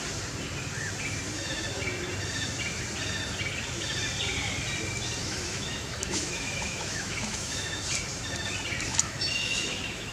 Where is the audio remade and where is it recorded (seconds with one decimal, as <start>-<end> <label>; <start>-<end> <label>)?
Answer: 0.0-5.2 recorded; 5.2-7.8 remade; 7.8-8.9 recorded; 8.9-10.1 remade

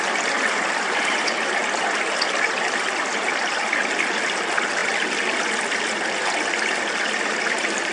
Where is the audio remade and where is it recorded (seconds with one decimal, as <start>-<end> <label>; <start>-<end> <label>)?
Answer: 0.0-7.9 recorded

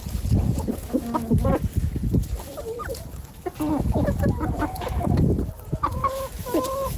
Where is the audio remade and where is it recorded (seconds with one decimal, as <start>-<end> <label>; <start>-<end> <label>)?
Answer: 0.0-0.8 recorded; 0.8-1.3 remade; 1.3-6.0 recorded; 6.0-7.0 remade

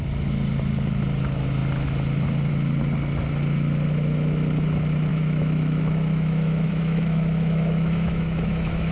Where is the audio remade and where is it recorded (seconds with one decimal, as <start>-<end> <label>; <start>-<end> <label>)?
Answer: 0.0-5.1 recorded; 5.1-8.9 remade

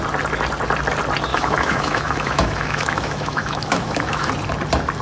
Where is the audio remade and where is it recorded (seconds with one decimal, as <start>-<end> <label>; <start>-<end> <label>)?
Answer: 0.0-1.3 recorded; 1.3-4.3 remade; 4.3-5.0 recorded

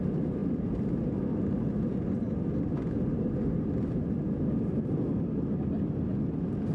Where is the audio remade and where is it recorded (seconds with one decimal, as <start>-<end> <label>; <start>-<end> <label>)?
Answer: 0.0-6.7 recorded